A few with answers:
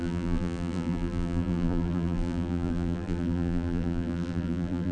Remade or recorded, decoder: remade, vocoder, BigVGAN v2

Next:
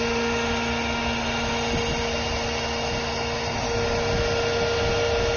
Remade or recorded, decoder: recorded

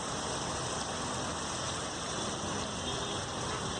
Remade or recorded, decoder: recorded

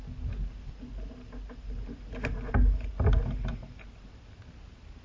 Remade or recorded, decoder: recorded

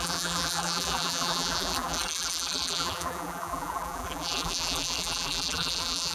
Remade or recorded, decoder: remade, vocoder, BigVGAN v2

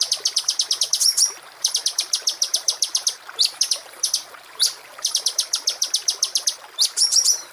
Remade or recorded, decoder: remade, vocoder, BigVGAN v2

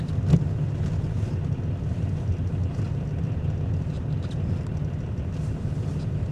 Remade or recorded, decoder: recorded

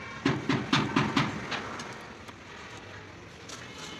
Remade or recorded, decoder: recorded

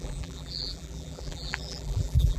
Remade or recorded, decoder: remade, vocoder, BigVGAN v2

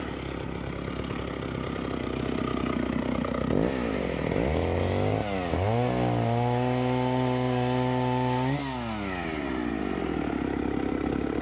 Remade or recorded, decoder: recorded